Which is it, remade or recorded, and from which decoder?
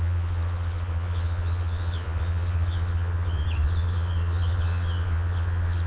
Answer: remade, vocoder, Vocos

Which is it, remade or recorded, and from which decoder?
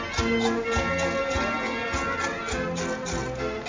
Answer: recorded